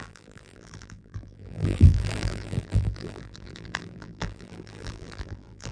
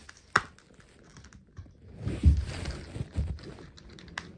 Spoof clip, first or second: first